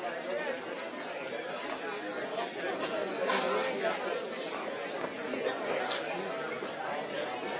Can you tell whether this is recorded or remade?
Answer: recorded